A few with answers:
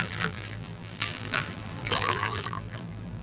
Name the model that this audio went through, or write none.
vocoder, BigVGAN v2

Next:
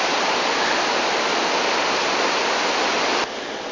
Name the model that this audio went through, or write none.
none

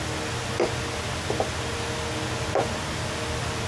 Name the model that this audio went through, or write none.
none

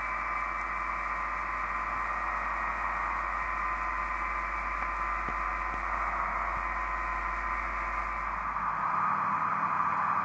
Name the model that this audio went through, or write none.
none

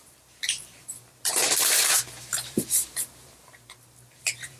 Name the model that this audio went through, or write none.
vocoder, BigVGAN v2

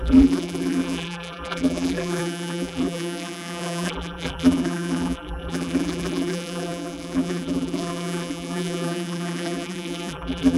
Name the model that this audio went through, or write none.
vocoder, BigVGAN v2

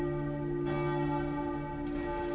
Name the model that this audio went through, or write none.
none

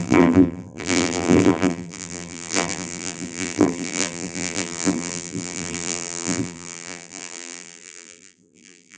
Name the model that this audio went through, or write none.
vocoder, BigVGAN v2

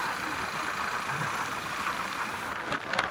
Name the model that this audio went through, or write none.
none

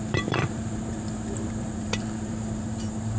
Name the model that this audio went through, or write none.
vocoder, BigVGAN v2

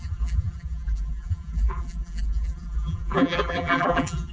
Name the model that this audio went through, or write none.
vocoder, BigVGAN v2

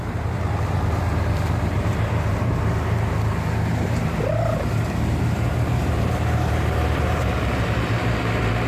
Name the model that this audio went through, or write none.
vocoder, BigVGAN v2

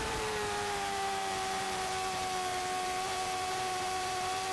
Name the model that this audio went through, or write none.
vocoder, BigVGAN v2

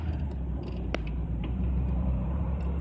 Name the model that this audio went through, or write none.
vocoder, BigVGAN v2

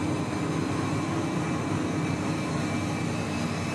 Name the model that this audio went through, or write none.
none